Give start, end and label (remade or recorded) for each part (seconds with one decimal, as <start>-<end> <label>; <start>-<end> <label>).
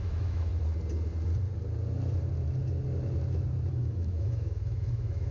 0.0-0.5 remade; 0.5-3.7 recorded; 3.7-5.3 remade